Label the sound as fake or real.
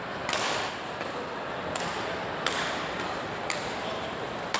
real